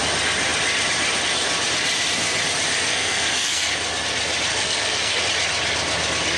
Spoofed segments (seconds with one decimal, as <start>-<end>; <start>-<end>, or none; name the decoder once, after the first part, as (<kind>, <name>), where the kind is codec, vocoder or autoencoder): 2.9-3.7 (codec, SNAC); 4.5-5.2